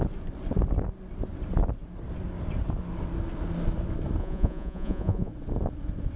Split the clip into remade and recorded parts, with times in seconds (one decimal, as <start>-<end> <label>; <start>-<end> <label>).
0.0-4.2 recorded; 4.2-5.3 remade; 5.3-6.2 recorded